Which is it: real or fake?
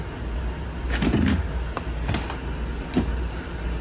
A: fake